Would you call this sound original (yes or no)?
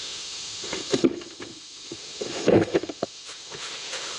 no